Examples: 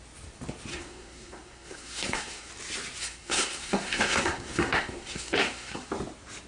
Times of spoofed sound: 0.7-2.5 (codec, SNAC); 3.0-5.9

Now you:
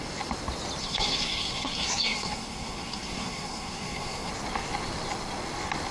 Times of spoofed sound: 0.8-4.3 (codec, SNAC)